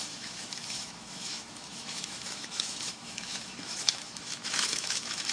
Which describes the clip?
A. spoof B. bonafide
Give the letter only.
A